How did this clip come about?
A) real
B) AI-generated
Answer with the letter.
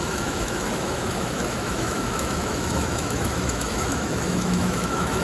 B